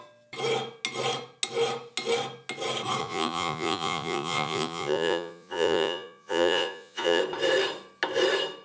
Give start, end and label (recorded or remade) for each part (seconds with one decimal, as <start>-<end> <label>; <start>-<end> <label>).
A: 0.0-3.0 recorded; 3.0-7.2 remade; 7.2-8.6 recorded